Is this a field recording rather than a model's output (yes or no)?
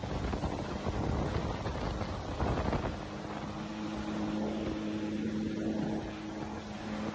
yes